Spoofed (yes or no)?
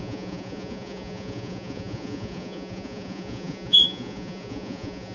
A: yes